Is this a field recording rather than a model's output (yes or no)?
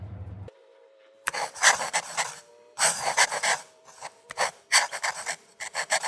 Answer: no